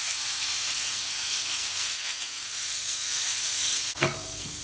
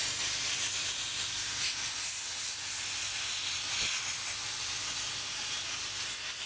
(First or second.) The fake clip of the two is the first